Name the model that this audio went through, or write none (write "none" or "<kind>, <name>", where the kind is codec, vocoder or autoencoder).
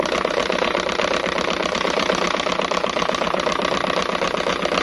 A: none